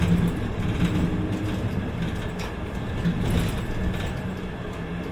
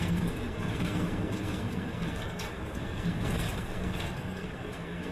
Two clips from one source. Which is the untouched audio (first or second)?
first